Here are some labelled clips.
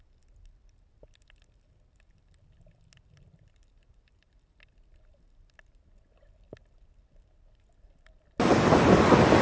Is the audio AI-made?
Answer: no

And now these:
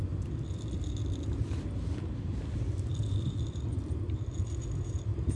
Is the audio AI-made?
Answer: yes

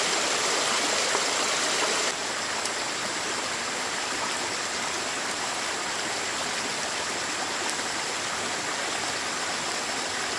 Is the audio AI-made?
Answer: no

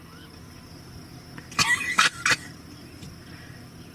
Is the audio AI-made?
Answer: no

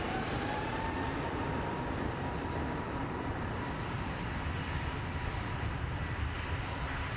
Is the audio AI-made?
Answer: yes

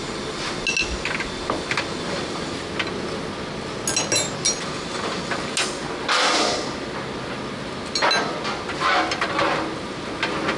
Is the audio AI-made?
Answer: no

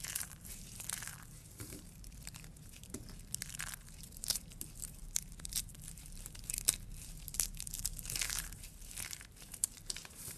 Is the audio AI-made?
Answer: yes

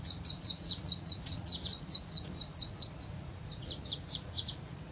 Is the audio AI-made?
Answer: yes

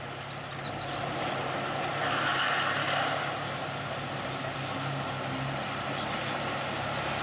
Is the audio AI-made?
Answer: no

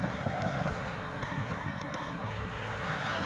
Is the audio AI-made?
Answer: yes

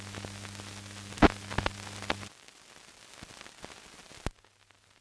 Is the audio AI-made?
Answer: no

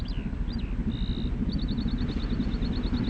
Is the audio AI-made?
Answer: no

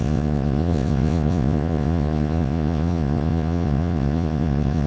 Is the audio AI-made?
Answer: yes